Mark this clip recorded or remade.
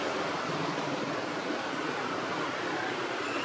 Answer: recorded